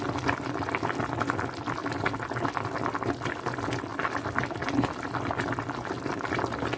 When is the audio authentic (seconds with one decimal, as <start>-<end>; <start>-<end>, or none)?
0.0-1.8; 2.5-6.8